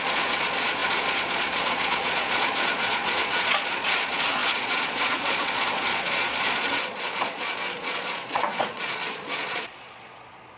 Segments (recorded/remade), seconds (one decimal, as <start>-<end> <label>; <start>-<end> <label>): 0.0-10.6 remade